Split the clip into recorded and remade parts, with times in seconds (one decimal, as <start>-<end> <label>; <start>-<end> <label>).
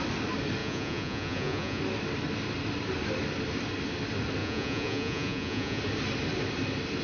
0.0-0.6 recorded; 0.6-1.8 remade; 1.8-4.4 recorded; 4.4-5.8 remade; 5.8-7.0 recorded